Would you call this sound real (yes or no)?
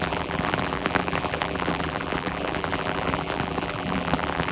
no